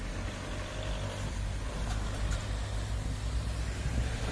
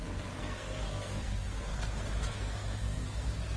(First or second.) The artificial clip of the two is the second